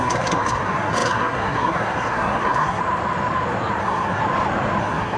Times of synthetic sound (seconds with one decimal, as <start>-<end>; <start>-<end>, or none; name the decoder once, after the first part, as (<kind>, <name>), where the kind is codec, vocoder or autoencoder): 0.0-2.8 (codec, SNAC); 3.8-4.2; 4.8-5.2